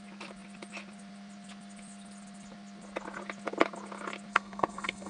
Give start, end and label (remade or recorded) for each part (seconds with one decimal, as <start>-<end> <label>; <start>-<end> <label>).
0.0-4.3 recorded; 4.3-5.1 remade